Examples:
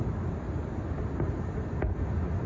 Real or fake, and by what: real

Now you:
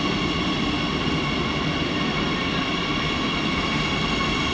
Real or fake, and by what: real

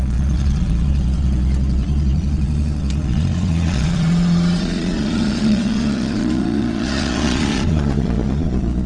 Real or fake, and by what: fake, vocoder, Vocos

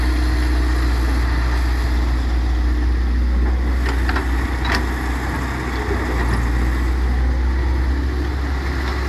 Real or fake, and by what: real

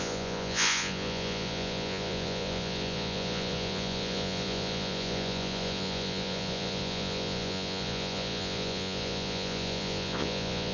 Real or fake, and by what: fake, vocoder, Vocos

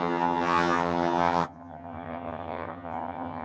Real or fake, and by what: fake, vocoder, HiFi-GAN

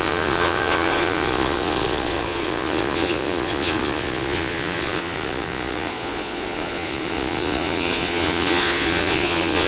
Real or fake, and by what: fake, vocoder, Vocos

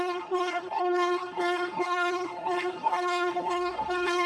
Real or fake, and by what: fake, codec, SNAC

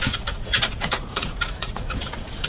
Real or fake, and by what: fake, vocoder, Vocos